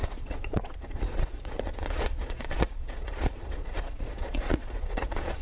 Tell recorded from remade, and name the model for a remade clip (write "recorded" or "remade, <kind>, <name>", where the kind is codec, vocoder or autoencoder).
remade, vocoder, Vocos